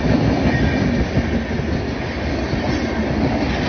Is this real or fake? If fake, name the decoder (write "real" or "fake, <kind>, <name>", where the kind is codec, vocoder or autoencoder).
real